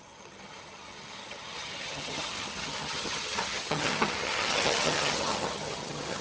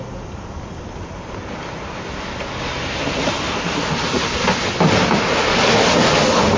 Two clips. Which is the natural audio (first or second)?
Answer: second